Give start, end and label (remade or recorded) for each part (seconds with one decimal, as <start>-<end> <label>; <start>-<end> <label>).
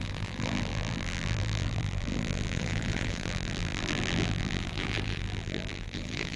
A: 0.0-6.4 remade